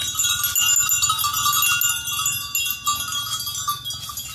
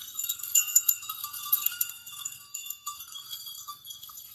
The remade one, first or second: second